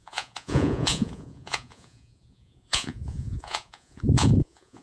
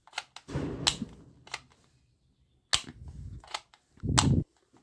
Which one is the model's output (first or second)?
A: first